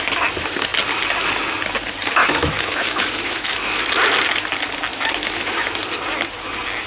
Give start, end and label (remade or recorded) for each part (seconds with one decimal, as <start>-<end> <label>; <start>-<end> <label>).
0.0-2.2 recorded; 2.2-3.9 remade; 3.9-4.9 recorded; 4.9-5.8 remade; 5.8-6.9 recorded